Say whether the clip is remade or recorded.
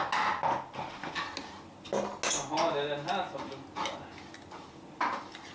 recorded